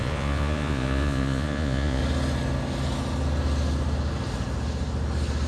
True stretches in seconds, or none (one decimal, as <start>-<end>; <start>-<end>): 2.0-5.5